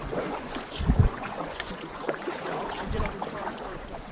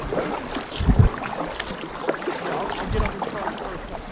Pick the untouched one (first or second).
second